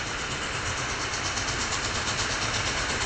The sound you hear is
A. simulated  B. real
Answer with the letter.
B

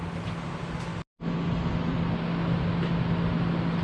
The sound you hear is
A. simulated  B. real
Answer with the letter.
B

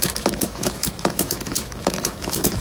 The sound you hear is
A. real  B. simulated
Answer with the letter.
B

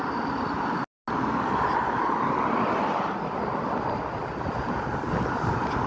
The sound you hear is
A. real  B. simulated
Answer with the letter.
A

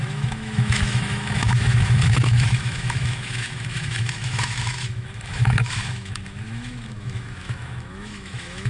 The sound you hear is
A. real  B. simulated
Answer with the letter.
B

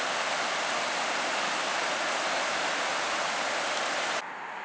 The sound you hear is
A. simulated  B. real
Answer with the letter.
B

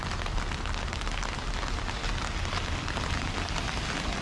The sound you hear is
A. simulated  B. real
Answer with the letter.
B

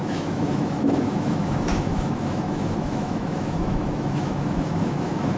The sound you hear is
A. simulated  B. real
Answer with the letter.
A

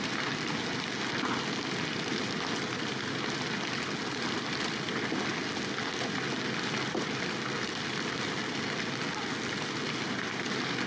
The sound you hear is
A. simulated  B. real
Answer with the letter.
B